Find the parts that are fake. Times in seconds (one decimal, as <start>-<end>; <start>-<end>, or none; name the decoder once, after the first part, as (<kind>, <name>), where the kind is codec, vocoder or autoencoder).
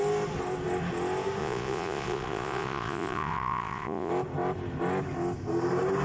1.4-4.1 (vocoder, Vocos)